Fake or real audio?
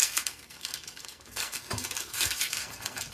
fake